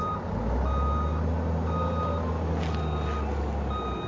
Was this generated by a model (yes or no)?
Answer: no